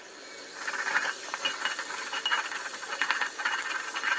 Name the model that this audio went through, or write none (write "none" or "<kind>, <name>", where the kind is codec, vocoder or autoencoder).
none